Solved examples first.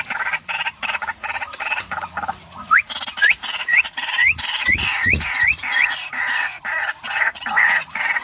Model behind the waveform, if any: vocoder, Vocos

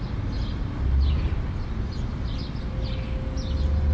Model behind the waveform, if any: none